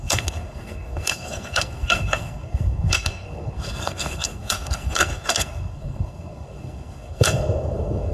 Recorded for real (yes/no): no